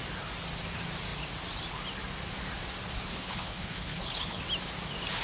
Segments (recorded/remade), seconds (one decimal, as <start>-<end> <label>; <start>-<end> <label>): 0.0-3.1 recorded; 3.1-4.4 remade; 4.4-5.2 recorded